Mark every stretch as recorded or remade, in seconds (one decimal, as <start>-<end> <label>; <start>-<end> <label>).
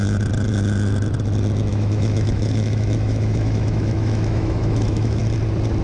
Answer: 0.0-1.7 recorded; 1.7-5.2 remade; 5.2-5.8 recorded